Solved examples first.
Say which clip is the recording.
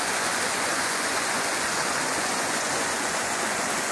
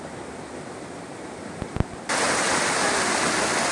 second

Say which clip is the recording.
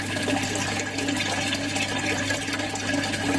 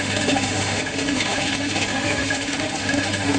first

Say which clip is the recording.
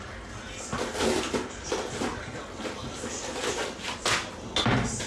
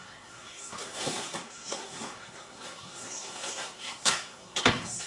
first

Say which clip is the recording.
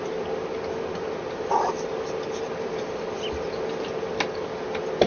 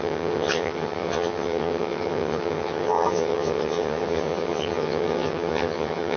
first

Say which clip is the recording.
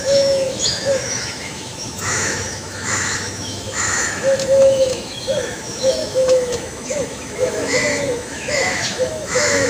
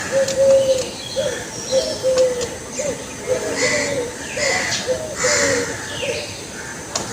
second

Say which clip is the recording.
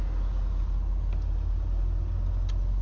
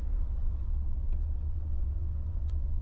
first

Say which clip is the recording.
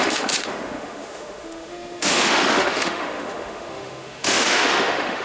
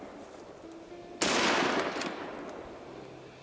second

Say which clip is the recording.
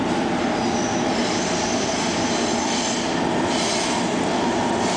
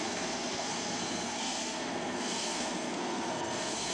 first